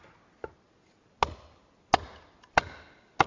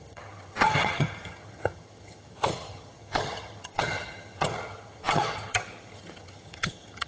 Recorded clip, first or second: first